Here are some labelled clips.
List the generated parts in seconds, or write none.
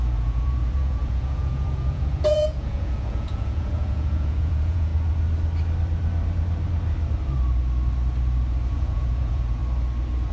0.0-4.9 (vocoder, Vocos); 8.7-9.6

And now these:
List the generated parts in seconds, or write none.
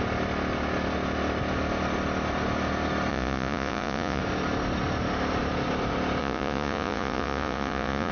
3.1-4.2 (vocoder, Vocos); 6.2-8.1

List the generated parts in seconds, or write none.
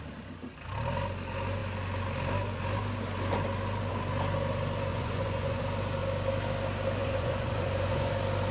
4.9-5.6 (vocoder, Vocos); 7.0-8.1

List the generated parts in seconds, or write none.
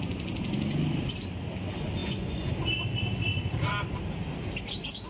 2.0-2.5 (vocoder, Vocos)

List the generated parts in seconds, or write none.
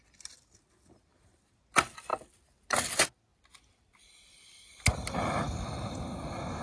none